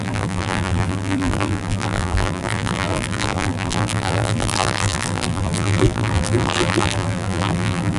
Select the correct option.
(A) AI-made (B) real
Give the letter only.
A